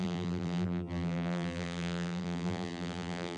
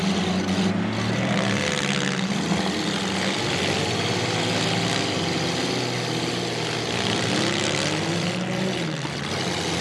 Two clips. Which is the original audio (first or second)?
second